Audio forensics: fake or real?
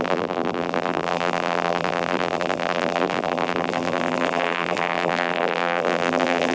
fake